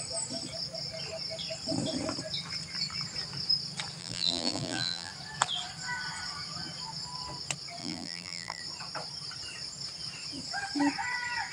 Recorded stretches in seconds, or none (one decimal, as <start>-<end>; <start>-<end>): 0.0-4.0; 5.1-7.8; 8.6-11.5

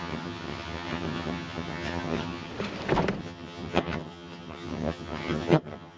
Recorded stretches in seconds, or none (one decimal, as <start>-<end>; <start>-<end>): 2.5-3.2

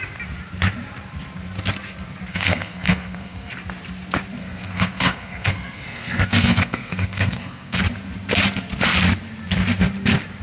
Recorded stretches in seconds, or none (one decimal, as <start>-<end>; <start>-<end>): 0.0-2.3; 3.5-4.4; 7.8-10.4

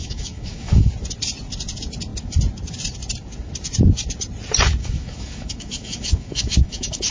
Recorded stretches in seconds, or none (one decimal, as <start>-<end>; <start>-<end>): 0.9-4.8